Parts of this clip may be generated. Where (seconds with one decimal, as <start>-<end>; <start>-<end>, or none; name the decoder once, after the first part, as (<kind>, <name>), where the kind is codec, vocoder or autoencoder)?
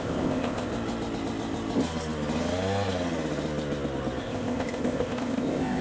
0.0-0.7 (codec, ZipCodec); 4.2-5.8